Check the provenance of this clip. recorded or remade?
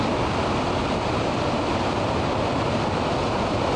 recorded